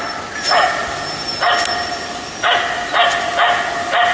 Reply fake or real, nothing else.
real